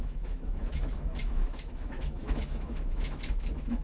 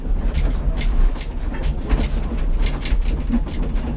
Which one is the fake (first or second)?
first